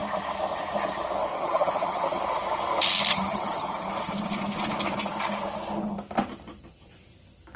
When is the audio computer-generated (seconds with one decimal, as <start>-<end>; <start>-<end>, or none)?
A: 1.3-2.2; 3.1-3.9